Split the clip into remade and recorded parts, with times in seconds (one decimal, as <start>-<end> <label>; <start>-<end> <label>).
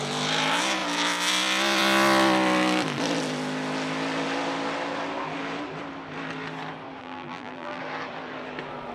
0.0-7.0 recorded; 7.0-7.8 remade; 7.8-8.9 recorded